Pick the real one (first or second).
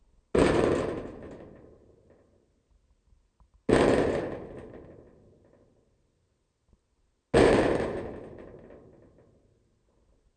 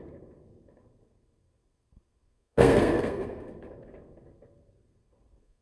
first